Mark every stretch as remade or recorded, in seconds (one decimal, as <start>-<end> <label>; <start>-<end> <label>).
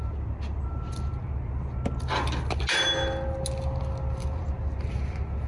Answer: 0.0-5.5 recorded